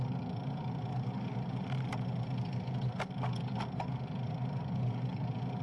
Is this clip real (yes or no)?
yes